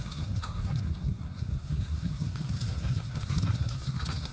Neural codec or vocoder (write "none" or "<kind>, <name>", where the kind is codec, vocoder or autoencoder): codec, SNAC